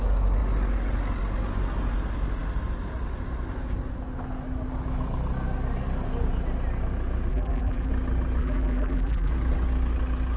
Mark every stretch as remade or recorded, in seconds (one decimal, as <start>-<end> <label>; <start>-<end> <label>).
0.0-7.3 recorded; 7.3-7.9 remade; 7.9-8.4 recorded; 8.4-9.3 remade; 9.3-10.4 recorded